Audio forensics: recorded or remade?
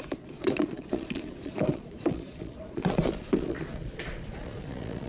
remade